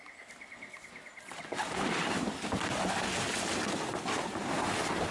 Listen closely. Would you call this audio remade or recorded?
recorded